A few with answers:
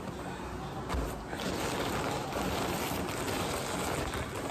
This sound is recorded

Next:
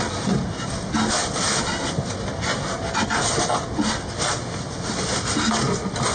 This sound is recorded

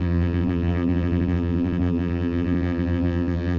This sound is remade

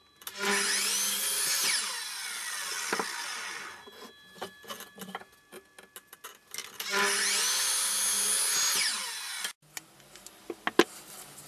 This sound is recorded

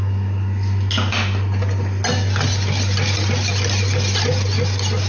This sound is recorded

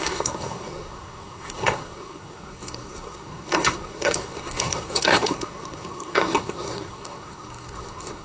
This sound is remade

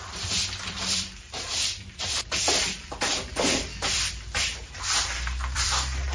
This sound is remade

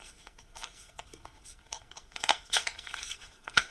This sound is remade